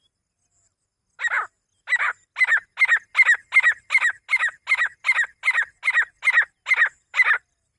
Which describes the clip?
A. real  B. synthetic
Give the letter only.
A